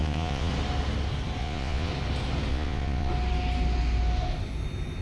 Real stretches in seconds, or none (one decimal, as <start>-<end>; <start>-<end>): 0.5-1.4; 1.9-2.5; 3.1-5.0